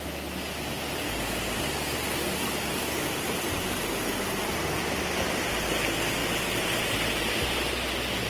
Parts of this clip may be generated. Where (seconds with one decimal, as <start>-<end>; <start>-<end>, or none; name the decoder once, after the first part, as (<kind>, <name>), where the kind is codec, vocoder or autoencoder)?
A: 2.7-3.9 (vocoder, BigVGAN v2)